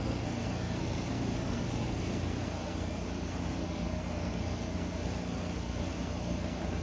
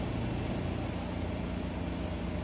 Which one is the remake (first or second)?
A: first